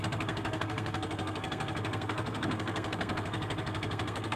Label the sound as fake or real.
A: fake